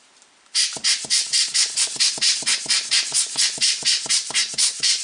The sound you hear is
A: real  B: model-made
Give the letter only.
B